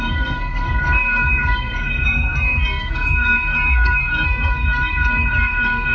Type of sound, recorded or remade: remade